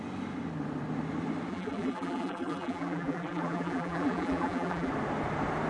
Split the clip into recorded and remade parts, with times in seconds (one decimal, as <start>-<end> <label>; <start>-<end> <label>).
0.0-1.5 recorded; 1.5-4.9 remade; 4.9-5.7 recorded